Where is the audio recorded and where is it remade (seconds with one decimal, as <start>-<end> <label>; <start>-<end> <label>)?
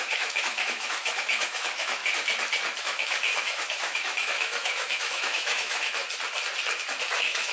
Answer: 0.0-2.0 remade; 2.0-2.8 recorded; 2.8-6.0 remade; 6.0-7.0 recorded; 7.0-7.5 remade